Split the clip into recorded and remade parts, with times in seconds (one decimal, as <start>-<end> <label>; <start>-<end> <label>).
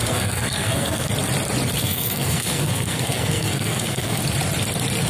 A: 0.0-1.1 remade; 1.1-1.8 recorded; 1.8-4.2 remade; 4.2-5.1 recorded